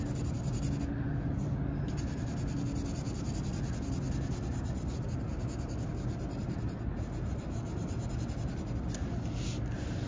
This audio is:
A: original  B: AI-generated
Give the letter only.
A